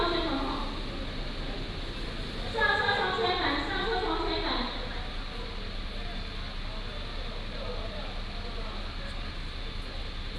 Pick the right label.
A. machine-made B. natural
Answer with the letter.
B